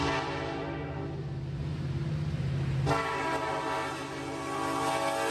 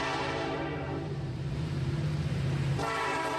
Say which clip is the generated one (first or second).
second